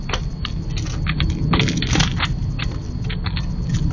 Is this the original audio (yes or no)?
yes